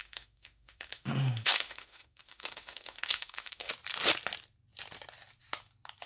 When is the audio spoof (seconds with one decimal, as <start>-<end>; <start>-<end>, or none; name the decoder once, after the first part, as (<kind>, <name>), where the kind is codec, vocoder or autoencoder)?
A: 0.0-3.7 (autoencoder, DAC-VAE)

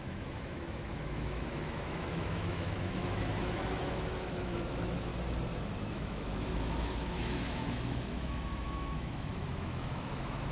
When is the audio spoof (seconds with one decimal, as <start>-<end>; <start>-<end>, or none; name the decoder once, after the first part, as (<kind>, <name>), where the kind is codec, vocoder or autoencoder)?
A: 0.0-5.1 (autoencoder, DAC-VAE); 5.9-10.5

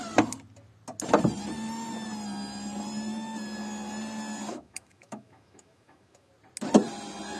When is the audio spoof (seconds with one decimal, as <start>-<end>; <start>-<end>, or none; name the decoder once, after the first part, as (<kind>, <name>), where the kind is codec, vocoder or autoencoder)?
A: 4.5-6.3 (autoencoder, DAC-VAE)

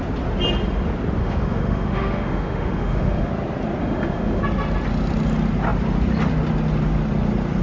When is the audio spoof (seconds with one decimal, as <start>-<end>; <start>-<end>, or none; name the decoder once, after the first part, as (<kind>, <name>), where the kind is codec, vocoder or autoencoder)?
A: 1.2-3.3 (autoencoder, DAC-VAE); 3.8-4.4

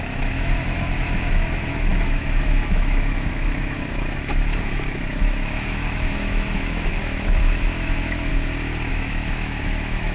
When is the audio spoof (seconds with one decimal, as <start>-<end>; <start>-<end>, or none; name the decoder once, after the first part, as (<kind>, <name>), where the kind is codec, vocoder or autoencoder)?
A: 0.0-8.3 (autoencoder, DAC-VAE); 8.9-10.1

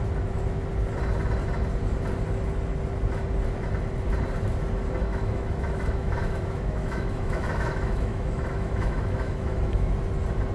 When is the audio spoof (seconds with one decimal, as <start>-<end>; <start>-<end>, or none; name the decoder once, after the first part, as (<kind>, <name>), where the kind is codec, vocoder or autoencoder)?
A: 5.1-9.9 (autoencoder, DAC-VAE)

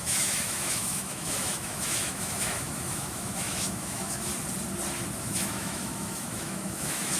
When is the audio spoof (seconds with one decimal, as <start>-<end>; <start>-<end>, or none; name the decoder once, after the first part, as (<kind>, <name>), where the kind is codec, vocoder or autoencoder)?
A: 0.0-4.3 (autoencoder, DAC-VAE); 5.2-7.2

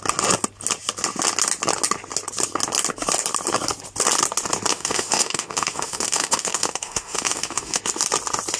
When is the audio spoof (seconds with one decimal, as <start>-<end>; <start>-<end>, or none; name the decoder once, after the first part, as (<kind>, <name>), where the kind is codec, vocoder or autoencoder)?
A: 4.7-7.8 (autoencoder, DAC-VAE)